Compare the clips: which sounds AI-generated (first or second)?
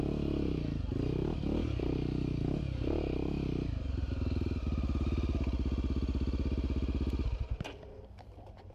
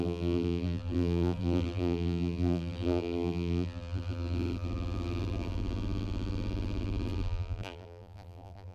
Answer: second